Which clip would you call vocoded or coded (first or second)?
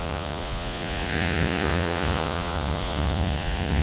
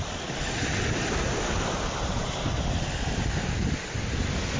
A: first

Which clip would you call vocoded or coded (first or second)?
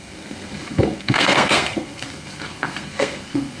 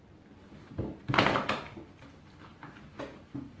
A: first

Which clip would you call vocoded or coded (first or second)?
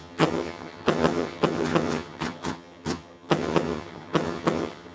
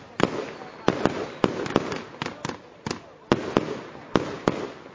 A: first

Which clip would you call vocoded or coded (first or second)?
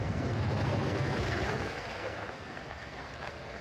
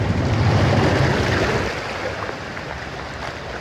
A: first